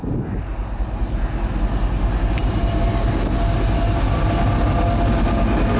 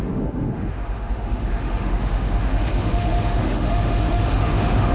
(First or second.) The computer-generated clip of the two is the second